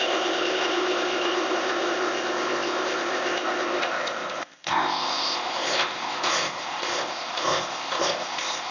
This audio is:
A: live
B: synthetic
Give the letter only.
B